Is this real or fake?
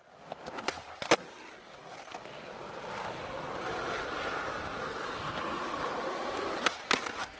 real